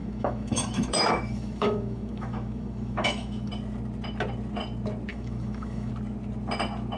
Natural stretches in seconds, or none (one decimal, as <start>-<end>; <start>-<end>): 3.5-5.1; 5.9-7.0